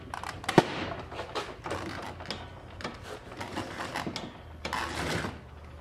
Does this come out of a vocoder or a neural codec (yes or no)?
no